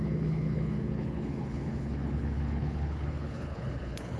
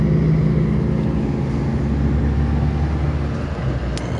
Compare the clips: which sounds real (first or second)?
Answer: second